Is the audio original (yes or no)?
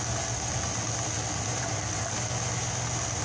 yes